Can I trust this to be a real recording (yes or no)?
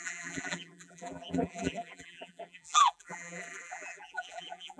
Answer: no